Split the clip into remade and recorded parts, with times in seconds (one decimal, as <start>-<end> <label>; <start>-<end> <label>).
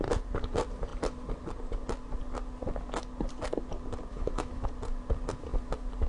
0.0-4.1 recorded; 4.1-4.7 remade; 4.7-6.1 recorded